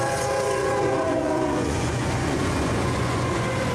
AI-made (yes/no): yes